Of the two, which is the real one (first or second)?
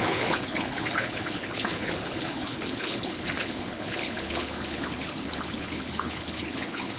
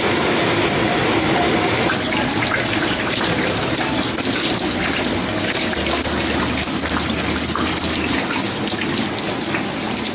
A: second